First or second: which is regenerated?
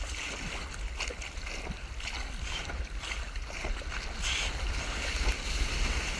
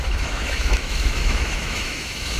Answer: second